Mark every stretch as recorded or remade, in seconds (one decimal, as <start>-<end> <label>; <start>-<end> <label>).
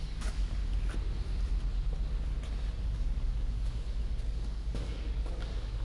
0.0-0.6 remade; 0.6-2.8 recorded; 2.8-5.8 remade